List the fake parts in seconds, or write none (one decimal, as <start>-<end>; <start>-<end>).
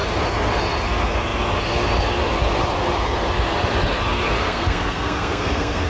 4.4-5.9